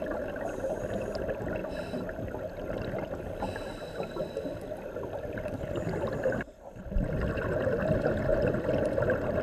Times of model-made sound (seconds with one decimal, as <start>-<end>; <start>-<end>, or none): 1.6-6.8; 8.3-9.4